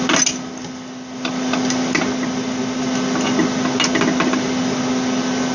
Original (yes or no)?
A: yes